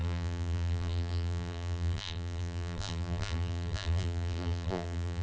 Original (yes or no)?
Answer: no